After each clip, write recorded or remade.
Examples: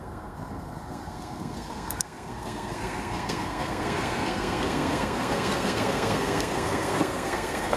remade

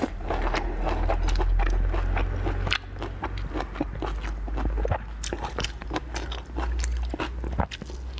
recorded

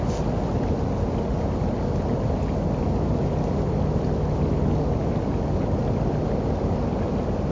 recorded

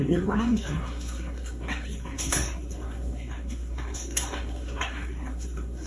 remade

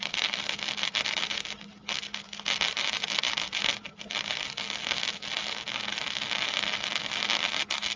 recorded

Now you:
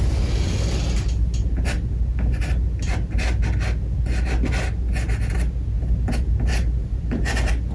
recorded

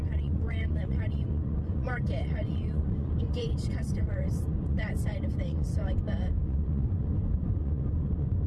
remade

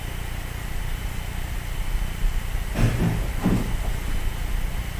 recorded